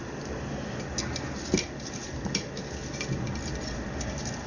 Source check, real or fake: real